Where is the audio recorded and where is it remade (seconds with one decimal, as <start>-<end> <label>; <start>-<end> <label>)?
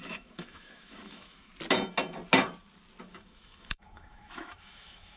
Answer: 0.0-1.5 remade; 1.5-3.0 recorded; 3.0-5.2 remade